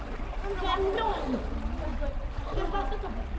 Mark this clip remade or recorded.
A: recorded